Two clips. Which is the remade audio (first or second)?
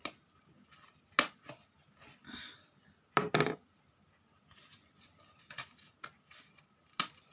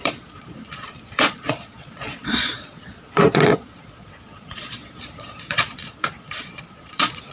second